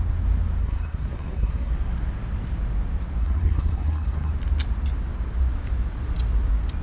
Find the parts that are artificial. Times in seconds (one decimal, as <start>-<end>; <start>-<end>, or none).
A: 0.6-1.7; 3.2-4.3